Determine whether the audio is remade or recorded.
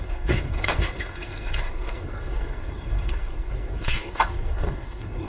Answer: remade